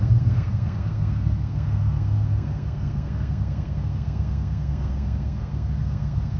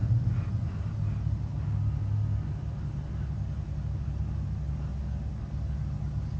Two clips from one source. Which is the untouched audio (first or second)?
second